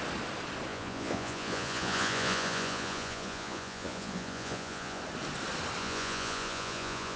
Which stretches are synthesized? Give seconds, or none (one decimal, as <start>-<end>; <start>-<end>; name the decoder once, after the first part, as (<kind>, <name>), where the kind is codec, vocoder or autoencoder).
0.7-5.0 (vocoder, Vocos); 5.8-7.2